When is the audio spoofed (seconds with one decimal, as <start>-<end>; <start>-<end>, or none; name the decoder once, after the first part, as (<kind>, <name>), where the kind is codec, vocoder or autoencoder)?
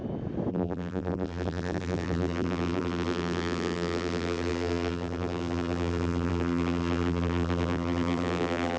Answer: 0.5-8.8 (vocoder, BigVGAN v2)